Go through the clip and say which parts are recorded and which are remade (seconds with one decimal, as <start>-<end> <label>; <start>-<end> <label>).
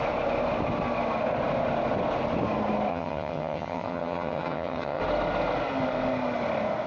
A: 0.0-2.9 recorded; 2.9-5.0 remade; 5.0-6.9 recorded